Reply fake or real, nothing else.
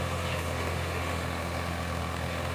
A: fake